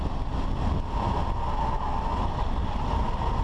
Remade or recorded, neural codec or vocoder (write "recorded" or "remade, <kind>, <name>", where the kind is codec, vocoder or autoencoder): recorded